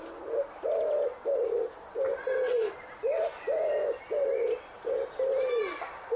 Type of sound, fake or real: real